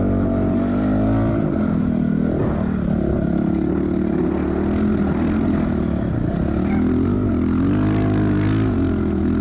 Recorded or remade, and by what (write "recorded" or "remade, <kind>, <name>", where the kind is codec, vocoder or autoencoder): recorded